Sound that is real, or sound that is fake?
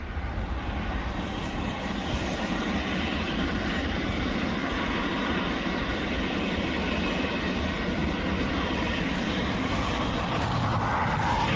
real